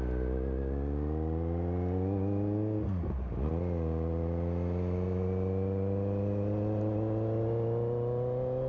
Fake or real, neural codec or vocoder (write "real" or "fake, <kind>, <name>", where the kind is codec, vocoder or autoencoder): real